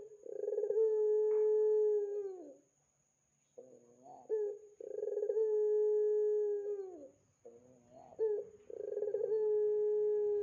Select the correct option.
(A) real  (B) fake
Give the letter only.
A